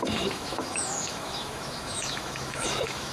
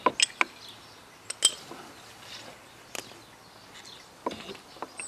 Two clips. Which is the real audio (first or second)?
second